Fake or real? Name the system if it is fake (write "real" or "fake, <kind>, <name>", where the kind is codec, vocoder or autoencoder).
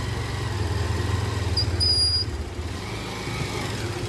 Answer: real